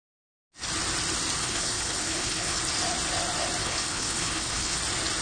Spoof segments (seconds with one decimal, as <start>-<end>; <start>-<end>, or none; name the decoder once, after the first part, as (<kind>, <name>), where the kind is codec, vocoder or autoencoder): 1.4-2.6 (codec, HILCodec); 3.6-4.8